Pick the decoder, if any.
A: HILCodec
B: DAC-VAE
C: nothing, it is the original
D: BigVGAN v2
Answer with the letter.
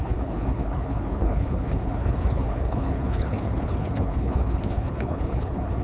A